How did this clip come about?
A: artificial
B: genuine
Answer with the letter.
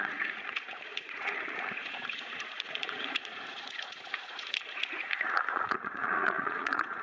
A